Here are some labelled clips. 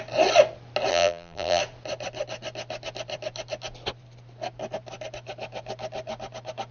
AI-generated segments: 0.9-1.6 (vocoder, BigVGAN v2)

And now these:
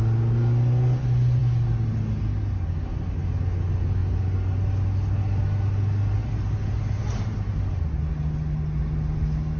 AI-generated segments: none

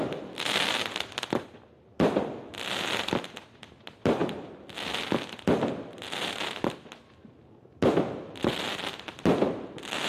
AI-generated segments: none

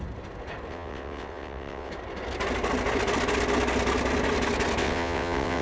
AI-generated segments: 0.7-1.9 (vocoder, WaveNeXt); 4.8-5.6

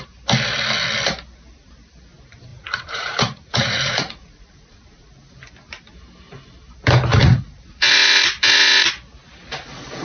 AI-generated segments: 2.5-5.1 (vocoder, Vocos); 7.1-8.9

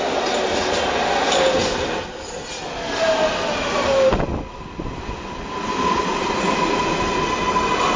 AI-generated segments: none

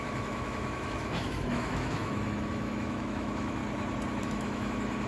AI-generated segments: 0.0-3.6 (autoencoder, DAC-VAE); 4.2-5.1

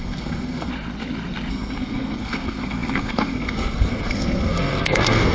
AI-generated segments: 0.0-0.7 (codec, SNAC); 1.5-5.3